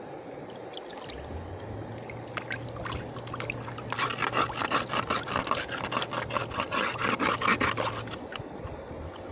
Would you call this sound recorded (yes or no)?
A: yes